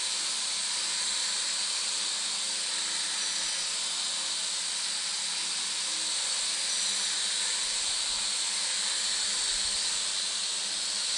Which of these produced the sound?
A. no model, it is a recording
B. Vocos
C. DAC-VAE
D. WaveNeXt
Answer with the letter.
A